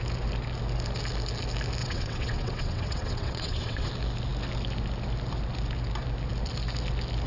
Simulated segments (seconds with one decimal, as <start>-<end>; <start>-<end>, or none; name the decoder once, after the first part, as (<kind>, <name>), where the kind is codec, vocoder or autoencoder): 1.8-3.9 (vocoder, WaveNeXt)

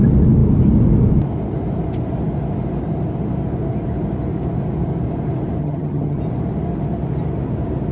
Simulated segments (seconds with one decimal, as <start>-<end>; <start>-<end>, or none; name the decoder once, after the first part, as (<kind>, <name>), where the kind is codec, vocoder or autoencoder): 5.6-6.2 (vocoder, HiFi-GAN)